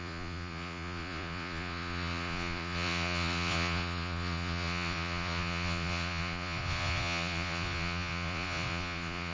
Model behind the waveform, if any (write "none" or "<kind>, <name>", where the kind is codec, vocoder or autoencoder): vocoder, Vocos